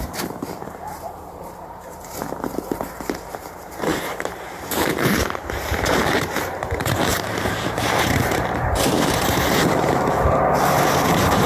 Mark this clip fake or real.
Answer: fake